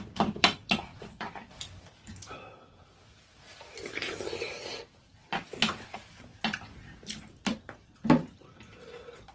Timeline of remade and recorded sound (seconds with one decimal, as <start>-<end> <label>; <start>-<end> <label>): 0.0-6.3 remade; 6.3-7.3 recorded; 7.3-9.3 remade